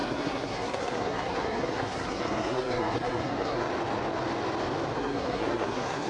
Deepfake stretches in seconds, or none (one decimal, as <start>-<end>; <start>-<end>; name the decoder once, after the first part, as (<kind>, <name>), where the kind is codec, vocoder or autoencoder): 0.0-3.7 (codec, SNAC); 4.9-6.1